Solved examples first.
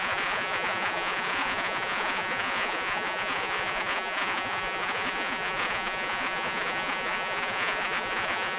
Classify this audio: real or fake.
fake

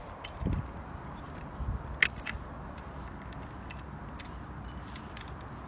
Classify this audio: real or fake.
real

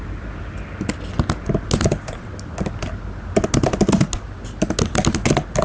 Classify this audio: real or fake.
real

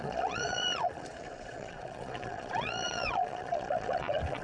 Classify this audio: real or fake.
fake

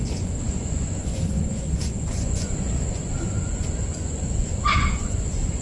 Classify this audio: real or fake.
fake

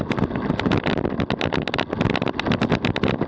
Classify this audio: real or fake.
real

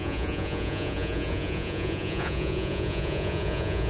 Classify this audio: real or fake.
fake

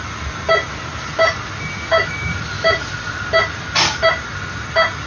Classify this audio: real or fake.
real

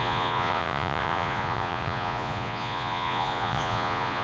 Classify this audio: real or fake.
fake